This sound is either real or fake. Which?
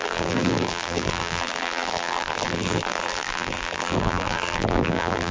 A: fake